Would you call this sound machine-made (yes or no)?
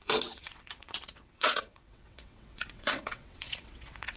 yes